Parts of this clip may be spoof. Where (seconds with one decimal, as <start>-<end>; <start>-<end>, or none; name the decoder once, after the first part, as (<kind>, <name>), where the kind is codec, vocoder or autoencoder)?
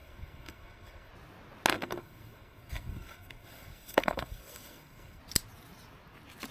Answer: 0.0-1.1 (codec, SNAC); 1.7-5.2